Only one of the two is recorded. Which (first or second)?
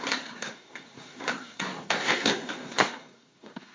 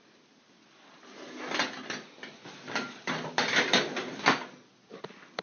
second